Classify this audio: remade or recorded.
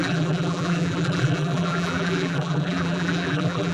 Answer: remade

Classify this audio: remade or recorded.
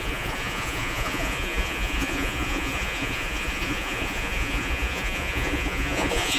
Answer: remade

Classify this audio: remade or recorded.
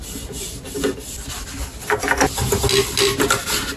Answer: recorded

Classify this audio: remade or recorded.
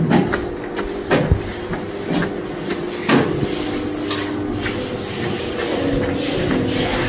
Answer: recorded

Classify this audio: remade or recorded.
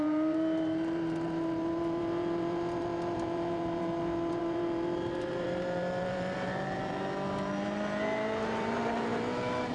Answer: remade